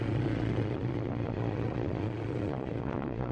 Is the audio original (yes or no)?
no